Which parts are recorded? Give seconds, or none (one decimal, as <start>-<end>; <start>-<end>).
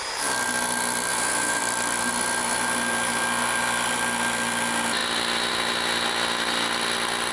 0.0-1.1; 1.6-7.3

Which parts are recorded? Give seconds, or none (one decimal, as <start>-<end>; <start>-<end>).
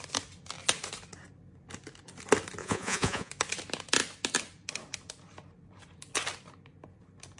0.0-2.6; 3.3-7.4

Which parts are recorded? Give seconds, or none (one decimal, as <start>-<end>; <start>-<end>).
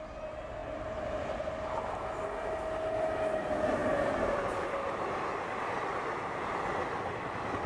0.0-7.7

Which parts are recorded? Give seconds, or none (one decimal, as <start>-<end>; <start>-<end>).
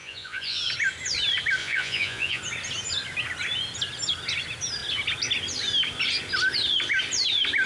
0.6-1.6; 2.4-7.7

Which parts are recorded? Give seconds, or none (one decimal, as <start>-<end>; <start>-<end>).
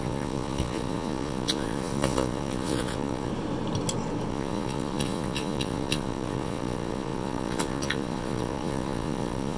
3.3-4.3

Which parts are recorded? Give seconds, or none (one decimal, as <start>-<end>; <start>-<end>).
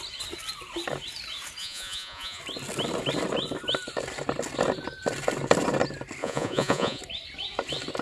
0.0-1.6; 2.4-6.2; 7.0-8.0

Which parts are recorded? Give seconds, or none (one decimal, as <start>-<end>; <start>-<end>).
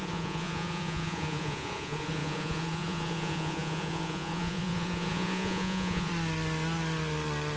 6.1-7.6